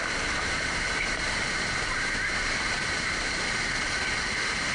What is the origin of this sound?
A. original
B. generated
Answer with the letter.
A